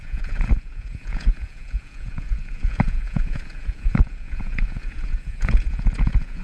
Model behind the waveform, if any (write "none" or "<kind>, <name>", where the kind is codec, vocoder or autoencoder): vocoder, Vocos